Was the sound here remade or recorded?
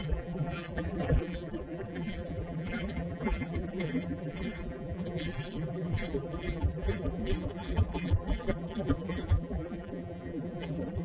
remade